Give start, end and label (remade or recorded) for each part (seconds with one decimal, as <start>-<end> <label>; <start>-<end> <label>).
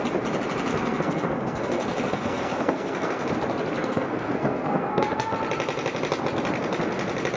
0.0-0.7 recorded; 0.7-3.3 remade; 3.3-3.8 recorded; 3.8-5.3 remade; 5.3-7.4 recorded